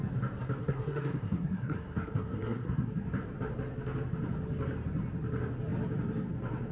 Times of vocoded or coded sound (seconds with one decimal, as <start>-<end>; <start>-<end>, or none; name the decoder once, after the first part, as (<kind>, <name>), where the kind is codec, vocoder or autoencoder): 0.6-2.9 (codec, SNAC)